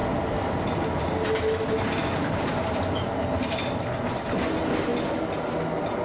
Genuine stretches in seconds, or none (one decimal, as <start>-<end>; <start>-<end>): 0.0-6.0